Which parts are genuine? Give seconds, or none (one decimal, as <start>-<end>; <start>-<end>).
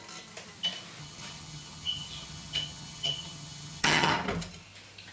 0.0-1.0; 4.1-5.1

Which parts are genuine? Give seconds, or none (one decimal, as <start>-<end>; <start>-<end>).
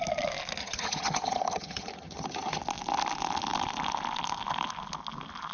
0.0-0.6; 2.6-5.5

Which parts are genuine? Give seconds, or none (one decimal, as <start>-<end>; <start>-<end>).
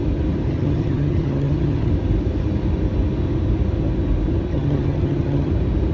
0.0-0.5; 1.9-4.5; 5.5-5.9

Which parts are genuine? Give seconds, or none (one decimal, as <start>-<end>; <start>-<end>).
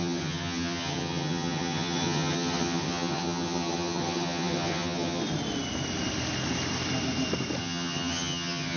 5.2-7.6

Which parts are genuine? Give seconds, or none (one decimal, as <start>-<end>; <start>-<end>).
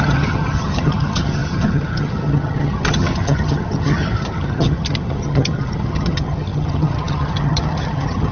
none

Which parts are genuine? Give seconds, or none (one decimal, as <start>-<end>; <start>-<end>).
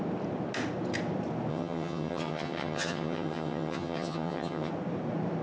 0.0-1.5; 4.7-5.4